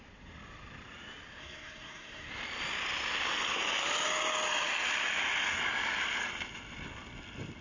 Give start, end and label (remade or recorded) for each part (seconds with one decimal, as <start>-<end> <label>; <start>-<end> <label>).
0.0-1.4 recorded; 1.4-2.3 remade; 2.3-7.6 recorded